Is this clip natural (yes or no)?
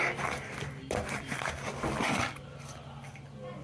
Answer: yes